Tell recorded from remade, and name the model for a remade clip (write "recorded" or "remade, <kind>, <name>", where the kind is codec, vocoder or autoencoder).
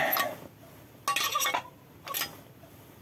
recorded